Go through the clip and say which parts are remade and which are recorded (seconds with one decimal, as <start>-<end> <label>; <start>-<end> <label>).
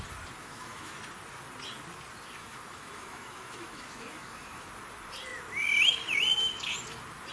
0.0-0.4 recorded; 0.4-1.0 remade; 1.0-2.4 recorded; 2.4-4.7 remade; 4.7-7.3 recorded